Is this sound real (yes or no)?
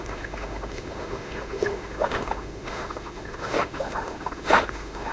no